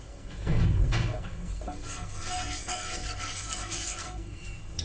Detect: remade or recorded remade